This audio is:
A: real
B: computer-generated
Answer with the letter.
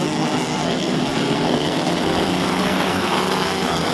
B